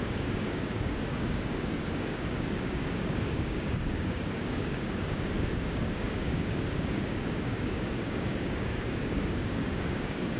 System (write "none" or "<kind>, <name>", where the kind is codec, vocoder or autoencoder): codec, DAC